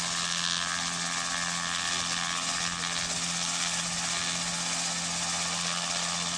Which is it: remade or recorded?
recorded